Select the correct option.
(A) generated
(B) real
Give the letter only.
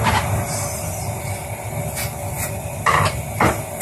A